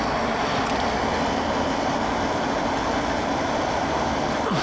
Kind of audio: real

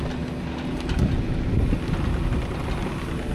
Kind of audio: real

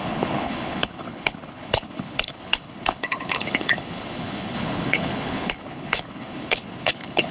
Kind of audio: fake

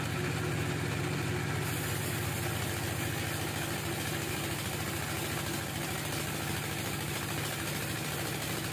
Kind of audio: real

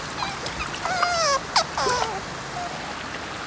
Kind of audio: real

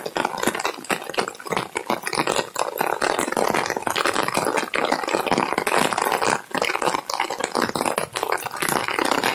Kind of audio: real